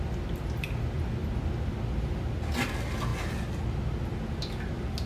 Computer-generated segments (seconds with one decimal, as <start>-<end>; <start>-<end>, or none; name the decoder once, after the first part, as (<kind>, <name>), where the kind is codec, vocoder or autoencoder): none